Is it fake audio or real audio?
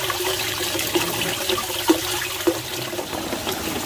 real